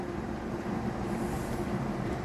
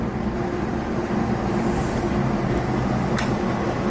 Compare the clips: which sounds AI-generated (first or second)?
first